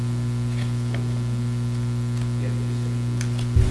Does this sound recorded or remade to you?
recorded